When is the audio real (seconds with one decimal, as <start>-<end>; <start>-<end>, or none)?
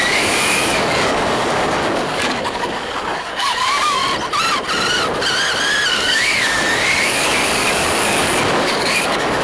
4.0-5.9